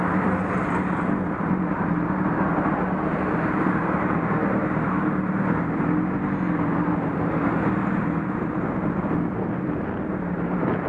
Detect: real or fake real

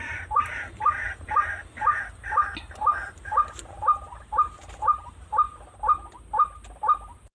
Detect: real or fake real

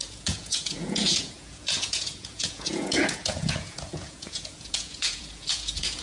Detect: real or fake fake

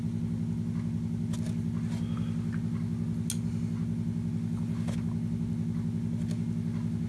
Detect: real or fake real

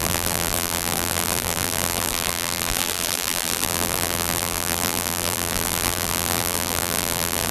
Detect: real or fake fake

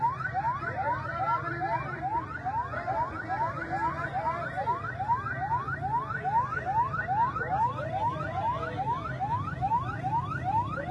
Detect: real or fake real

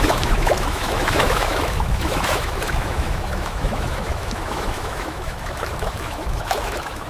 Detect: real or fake fake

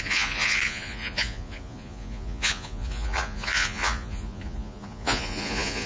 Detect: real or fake fake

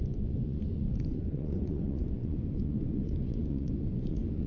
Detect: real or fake fake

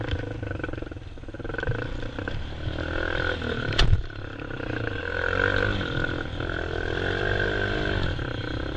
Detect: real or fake real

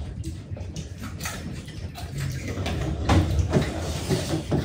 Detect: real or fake fake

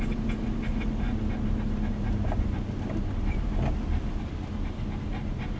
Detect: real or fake real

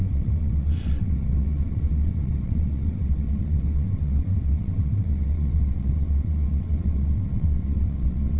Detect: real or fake fake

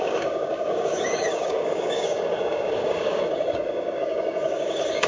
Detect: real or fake fake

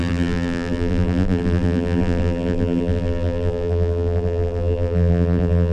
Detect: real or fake fake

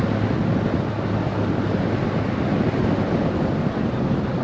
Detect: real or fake real